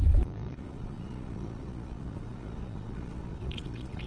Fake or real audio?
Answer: fake